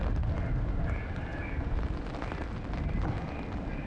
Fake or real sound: real